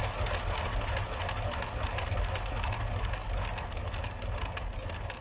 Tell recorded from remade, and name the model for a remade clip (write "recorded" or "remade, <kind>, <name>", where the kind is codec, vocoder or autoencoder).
recorded